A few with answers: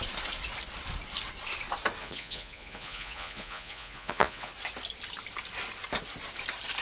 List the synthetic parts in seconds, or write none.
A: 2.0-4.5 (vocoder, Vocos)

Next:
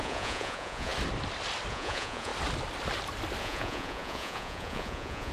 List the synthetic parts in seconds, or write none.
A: 0.0-0.9 (vocoder, Vocos); 1.7-2.3; 3.4-5.3

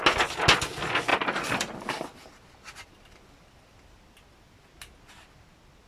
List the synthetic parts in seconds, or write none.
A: none

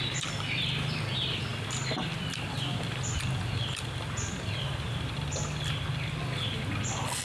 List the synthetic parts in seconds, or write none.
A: none

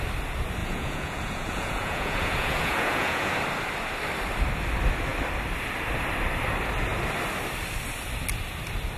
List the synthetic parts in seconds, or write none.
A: 0.6-3.3 (vocoder, Vocos)